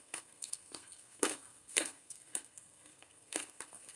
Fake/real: fake